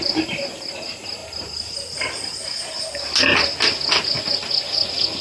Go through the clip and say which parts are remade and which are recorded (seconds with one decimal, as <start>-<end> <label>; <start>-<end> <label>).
0.0-5.2 recorded